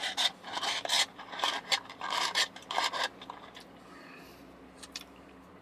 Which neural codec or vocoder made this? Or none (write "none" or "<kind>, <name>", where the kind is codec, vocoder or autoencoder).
vocoder, BigVGAN v2